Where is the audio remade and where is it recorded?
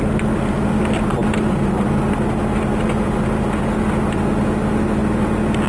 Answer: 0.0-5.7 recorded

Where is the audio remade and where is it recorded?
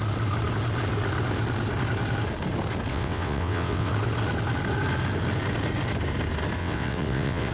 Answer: 0.0-2.9 recorded; 2.9-3.9 remade; 3.9-6.6 recorded; 6.6-7.5 remade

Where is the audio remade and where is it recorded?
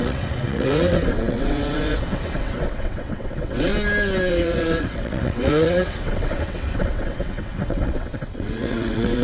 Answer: 0.0-3.7 remade; 3.7-4.3 recorded; 4.3-9.2 remade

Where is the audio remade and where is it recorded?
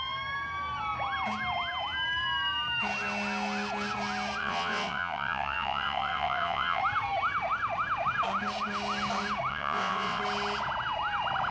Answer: 0.0-4.4 recorded; 4.4-6.8 remade; 6.8-9.5 recorded; 9.5-10.2 remade; 10.2-11.5 recorded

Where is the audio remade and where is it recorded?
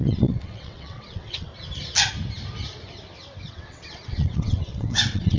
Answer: 0.0-1.5 remade; 1.5-3.5 recorded; 3.5-5.4 remade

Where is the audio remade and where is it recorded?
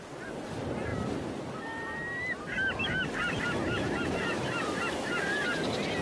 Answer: 0.0-6.0 recorded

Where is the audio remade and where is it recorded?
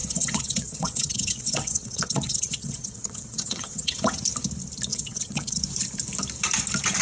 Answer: 0.0-4.2 remade; 4.2-4.9 recorded; 4.9-5.6 remade; 5.6-7.0 recorded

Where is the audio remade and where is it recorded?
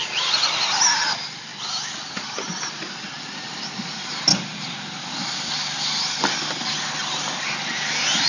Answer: 0.0-8.3 recorded